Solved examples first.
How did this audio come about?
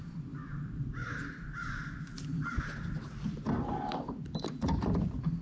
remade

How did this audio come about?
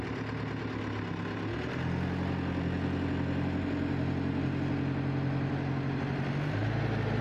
recorded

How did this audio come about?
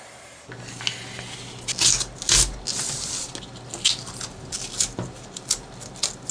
recorded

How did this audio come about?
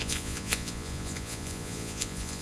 remade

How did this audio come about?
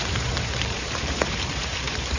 remade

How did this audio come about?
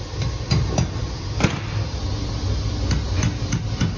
recorded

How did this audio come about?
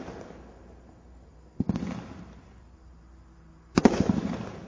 recorded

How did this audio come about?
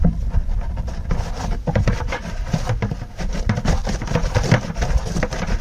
recorded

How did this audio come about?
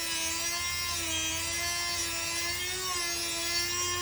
recorded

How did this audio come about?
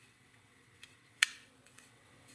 remade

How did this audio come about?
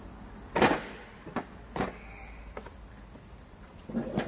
recorded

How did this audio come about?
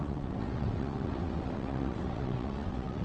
remade